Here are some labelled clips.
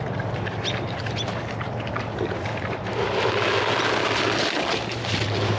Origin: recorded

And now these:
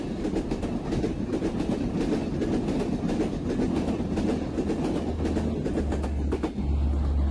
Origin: recorded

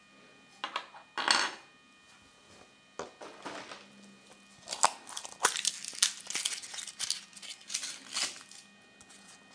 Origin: recorded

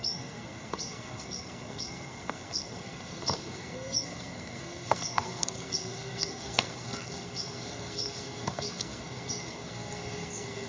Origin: remade